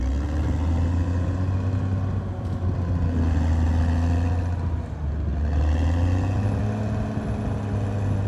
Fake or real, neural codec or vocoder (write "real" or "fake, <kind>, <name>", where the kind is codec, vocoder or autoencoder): real